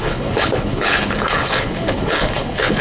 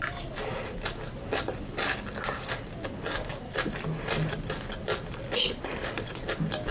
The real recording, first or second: second